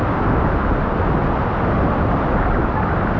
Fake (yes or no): no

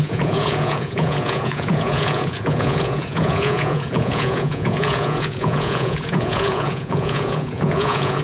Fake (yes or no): yes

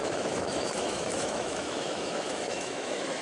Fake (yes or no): yes